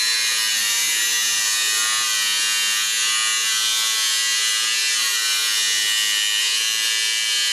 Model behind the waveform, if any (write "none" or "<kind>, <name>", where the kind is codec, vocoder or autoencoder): none